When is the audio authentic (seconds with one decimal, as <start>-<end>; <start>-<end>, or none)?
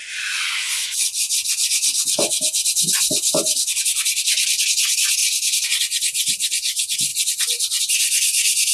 0.8-4.6